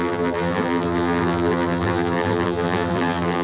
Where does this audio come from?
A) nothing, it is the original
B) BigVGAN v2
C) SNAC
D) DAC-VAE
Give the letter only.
B